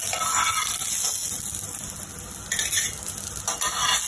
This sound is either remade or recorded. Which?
recorded